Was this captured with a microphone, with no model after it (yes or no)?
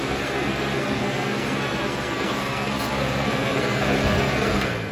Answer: no